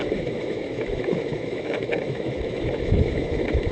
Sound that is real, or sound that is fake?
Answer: fake